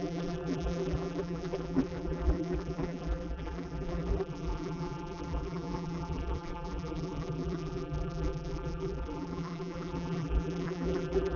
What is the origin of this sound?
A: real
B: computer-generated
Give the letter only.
B